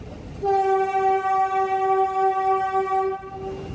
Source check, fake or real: real